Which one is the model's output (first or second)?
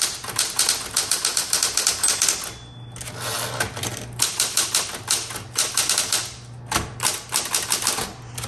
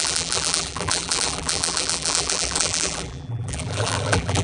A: second